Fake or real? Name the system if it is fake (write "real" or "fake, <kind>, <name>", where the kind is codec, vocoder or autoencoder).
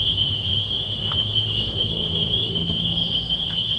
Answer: fake, autoencoder, DAC-VAE